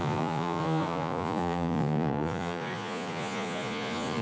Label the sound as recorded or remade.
remade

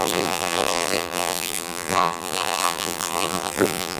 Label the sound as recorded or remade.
remade